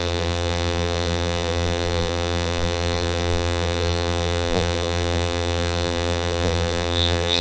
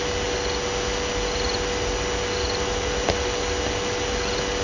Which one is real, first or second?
second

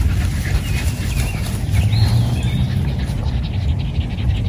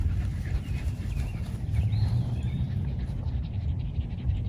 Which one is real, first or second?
first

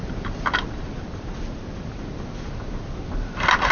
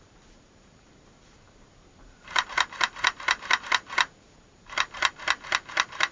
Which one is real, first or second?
first